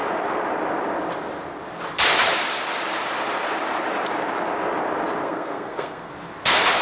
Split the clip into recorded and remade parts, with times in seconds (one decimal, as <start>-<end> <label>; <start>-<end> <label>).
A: 0.0-5.2 recorded; 5.2-6.1 remade; 6.1-6.8 recorded